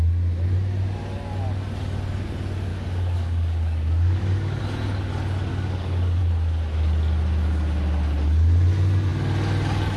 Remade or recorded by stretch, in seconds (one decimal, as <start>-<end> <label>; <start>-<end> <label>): 0.0-2.7 recorded; 2.7-4.6 remade; 4.6-5.5 recorded; 5.5-6.2 remade; 6.2-10.0 recorded